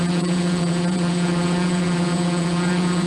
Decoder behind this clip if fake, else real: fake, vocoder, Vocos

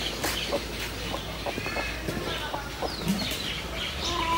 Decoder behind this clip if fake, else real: real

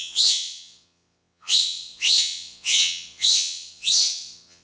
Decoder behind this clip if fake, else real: fake, vocoder, WaveNeXt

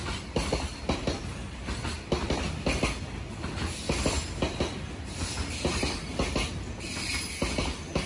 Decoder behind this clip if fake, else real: real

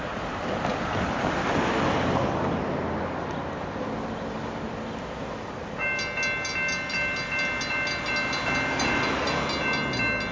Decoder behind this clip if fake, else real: real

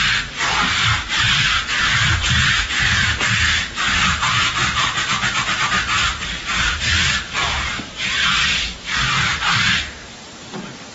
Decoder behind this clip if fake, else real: real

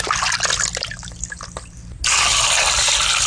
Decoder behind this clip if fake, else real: real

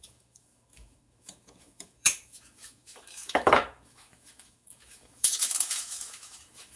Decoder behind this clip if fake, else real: fake, autoencoder, DAC-VAE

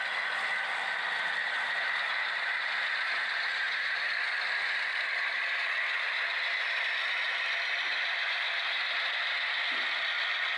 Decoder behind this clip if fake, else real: real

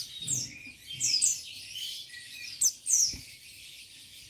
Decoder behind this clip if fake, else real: real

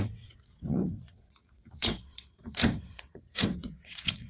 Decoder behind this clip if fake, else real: fake, vocoder, WaveNeXt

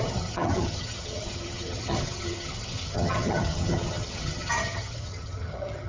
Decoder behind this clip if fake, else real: fake, vocoder, HiFi-GAN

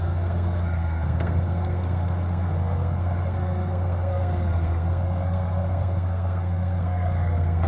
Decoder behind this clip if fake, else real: fake, codec, SNAC